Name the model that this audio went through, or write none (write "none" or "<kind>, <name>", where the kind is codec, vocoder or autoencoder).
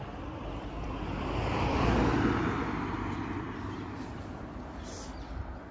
vocoder, BigVGAN v2